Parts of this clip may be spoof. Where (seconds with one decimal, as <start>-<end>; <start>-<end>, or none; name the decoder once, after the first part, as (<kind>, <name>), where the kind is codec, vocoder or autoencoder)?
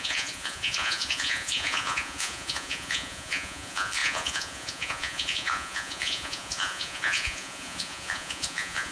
0.0-8.9 (vocoder, Vocos)